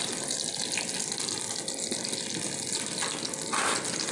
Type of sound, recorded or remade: recorded